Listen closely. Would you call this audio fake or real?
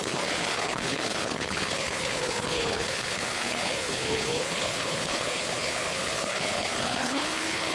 fake